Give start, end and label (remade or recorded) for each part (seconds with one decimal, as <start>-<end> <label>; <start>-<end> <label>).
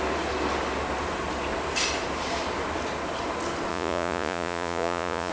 0.0-3.7 recorded; 3.7-5.3 remade